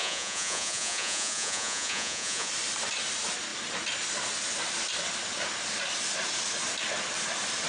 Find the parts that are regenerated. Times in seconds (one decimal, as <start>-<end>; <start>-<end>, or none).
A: 0.0-2.5